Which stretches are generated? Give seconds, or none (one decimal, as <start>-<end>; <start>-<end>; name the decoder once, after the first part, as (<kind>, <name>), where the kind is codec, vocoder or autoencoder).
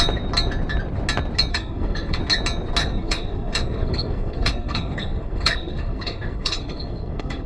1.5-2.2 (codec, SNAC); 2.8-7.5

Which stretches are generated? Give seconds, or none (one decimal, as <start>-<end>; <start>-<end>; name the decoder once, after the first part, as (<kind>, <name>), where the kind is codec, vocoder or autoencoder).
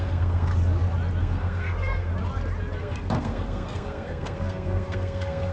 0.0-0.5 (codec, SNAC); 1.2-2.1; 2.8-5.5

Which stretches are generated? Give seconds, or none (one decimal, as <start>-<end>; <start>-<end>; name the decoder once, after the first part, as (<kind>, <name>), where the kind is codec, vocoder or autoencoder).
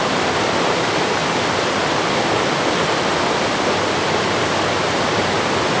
none